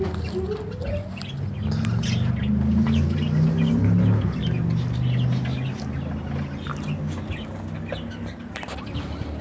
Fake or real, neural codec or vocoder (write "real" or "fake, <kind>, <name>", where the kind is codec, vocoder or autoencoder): real